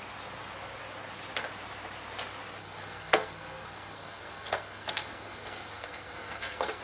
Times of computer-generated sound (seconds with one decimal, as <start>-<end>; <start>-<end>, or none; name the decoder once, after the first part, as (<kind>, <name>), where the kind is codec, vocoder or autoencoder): 2.6-6.8 (codec, SNAC)